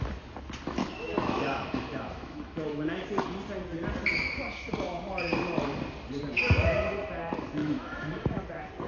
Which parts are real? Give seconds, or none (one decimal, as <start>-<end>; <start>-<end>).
0.0-0.8; 3.3-7.6; 8.4-8.9